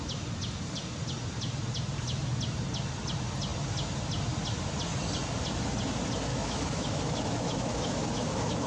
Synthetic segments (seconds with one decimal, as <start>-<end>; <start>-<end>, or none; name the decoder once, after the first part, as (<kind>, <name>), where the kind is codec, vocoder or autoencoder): 6.3-8.7 (autoencoder, DAC-VAE)